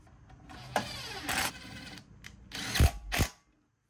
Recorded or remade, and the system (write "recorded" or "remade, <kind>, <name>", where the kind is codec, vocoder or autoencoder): recorded